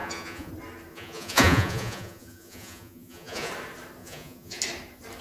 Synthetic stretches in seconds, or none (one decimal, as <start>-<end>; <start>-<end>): 0.0-0.5; 0.9-3.5; 4.0-4.6